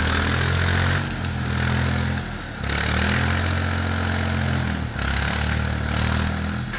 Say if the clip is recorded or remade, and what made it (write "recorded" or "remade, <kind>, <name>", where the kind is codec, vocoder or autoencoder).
recorded